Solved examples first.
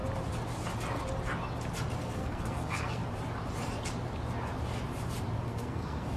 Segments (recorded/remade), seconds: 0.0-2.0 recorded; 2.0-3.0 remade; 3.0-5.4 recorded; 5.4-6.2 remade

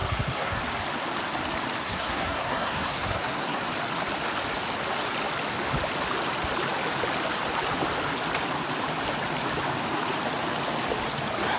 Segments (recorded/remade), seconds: 0.0-0.6 remade; 0.6-1.8 recorded; 1.8-3.6 remade; 3.6-11.6 recorded

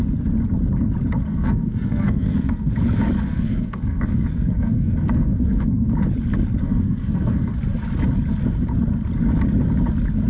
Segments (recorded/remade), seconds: 0.0-1.3 recorded; 1.3-2.7 remade; 2.7-3.3 recorded; 3.3-5.9 remade; 5.9-6.6 recorded; 6.6-7.5 remade; 7.5-10.3 recorded

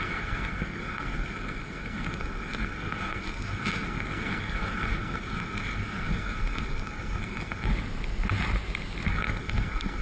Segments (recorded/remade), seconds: 0.0-7.7 remade; 7.7-9.1 recorded; 9.1-10.0 remade

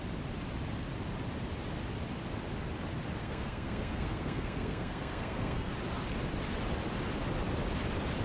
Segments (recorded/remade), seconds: 0.0-3.2 recorded; 3.2-5.7 remade; 5.7-8.2 recorded